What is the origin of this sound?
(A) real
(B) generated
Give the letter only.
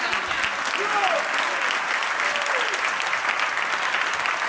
A